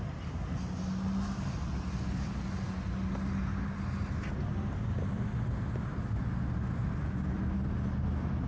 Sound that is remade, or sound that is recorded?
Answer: recorded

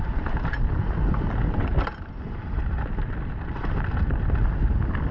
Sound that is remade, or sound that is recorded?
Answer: recorded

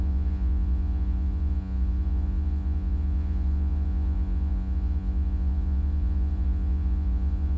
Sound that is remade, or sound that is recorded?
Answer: remade